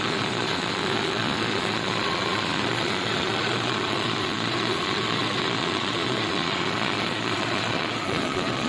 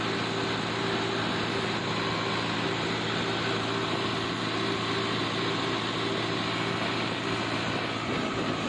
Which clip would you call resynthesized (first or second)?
first